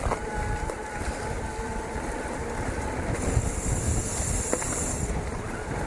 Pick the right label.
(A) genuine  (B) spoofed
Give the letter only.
A